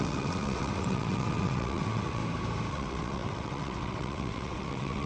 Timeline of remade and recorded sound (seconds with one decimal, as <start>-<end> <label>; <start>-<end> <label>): 0.0-2.2 remade; 2.2-2.7 recorded; 2.7-5.1 remade